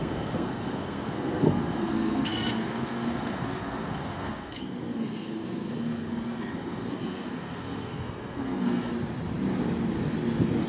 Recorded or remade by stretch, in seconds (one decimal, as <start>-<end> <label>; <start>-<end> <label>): 0.0-8.9 remade; 8.9-10.7 recorded